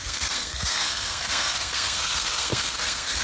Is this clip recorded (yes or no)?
no